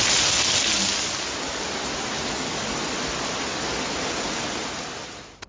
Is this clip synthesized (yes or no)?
no